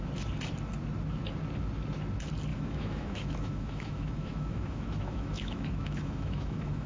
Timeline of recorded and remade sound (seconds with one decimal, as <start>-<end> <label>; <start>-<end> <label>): 0.0-2.5 recorded; 2.5-6.9 remade